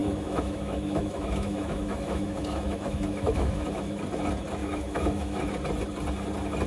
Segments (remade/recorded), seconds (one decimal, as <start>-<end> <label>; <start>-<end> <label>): 0.0-4.0 remade; 4.0-4.6 recorded; 4.6-5.4 remade; 5.4-6.7 recorded

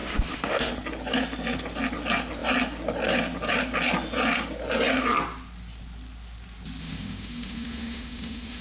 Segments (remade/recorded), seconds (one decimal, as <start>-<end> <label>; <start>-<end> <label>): 0.0-0.7 remade; 0.7-6.8 recorded; 6.8-8.6 remade

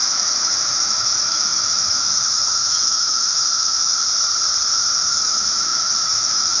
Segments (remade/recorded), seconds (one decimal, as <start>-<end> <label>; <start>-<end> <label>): 0.0-4.0 remade; 4.0-5.0 recorded; 5.0-6.6 remade